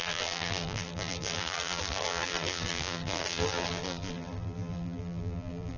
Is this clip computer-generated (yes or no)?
yes